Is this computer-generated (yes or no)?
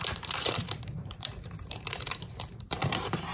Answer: yes